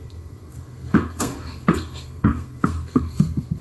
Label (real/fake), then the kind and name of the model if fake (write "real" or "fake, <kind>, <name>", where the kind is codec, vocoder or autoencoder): fake, codec, SNAC